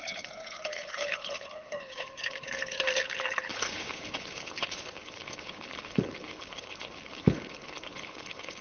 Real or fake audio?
fake